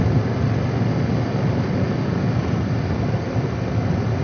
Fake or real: real